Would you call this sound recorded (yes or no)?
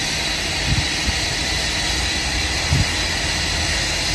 yes